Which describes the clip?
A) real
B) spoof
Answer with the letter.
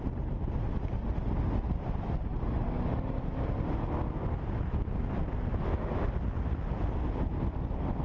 A